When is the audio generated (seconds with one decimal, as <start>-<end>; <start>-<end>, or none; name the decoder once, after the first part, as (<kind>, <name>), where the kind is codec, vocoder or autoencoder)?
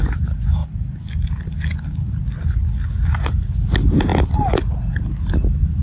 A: none